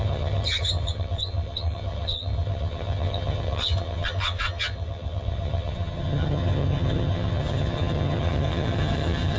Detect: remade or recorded remade